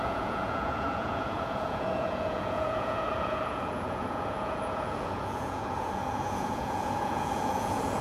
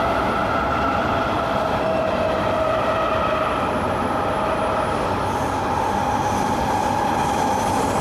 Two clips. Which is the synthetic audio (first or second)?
first